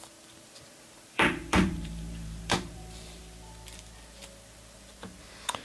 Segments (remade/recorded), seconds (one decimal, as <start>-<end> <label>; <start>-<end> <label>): 0.0-0.7 recorded; 0.7-3.2 remade; 3.2-5.6 recorded